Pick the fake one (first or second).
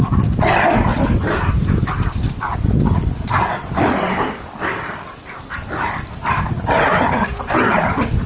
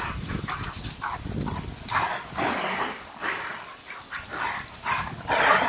second